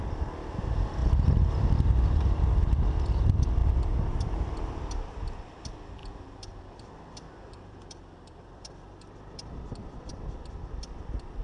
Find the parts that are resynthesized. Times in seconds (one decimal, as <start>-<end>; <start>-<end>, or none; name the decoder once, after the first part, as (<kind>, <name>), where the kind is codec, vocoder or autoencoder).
1.0-1.9 (vocoder, BigVGAN v2); 3.6-4.8; 6.0-10.1